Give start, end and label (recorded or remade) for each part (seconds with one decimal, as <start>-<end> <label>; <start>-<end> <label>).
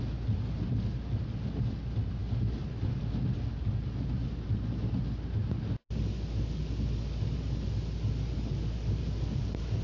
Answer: 0.0-9.8 recorded